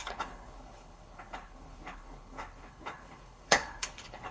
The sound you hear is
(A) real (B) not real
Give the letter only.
B